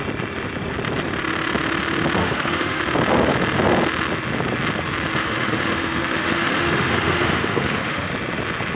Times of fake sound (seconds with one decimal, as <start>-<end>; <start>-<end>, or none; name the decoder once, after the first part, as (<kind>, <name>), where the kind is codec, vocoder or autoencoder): 2.2-2.8 (autoencoder, DAC-VAE); 5.2-8.1